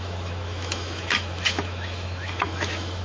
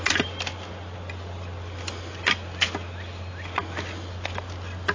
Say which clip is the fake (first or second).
first